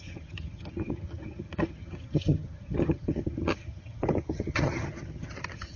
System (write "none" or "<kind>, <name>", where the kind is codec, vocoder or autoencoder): vocoder, HiFi-GAN